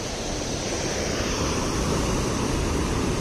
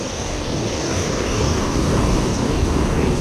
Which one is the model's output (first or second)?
second